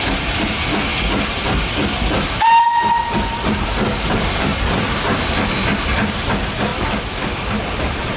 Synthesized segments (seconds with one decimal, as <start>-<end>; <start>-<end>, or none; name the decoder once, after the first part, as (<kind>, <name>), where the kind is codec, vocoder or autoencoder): 0.0-0.9 (vocoder, BigVGAN v2); 4.1-4.5; 6.1-6.7; 7.5-8.2